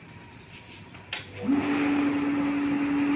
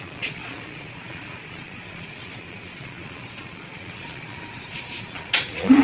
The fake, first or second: second